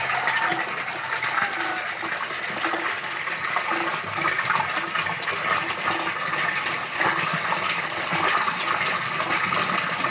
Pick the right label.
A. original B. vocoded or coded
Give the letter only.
A